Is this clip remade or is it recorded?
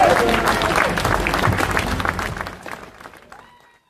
recorded